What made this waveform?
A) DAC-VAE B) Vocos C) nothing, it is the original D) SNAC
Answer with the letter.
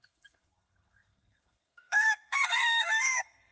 D